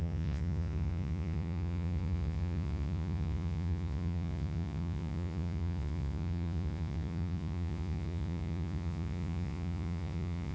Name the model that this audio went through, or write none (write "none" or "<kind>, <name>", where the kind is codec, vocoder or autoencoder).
vocoder, Vocos